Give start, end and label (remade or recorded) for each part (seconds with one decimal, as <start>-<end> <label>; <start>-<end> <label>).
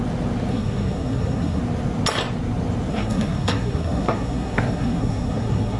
0.0-0.5 recorded; 0.5-1.6 remade; 1.6-2.9 recorded; 2.9-5.8 remade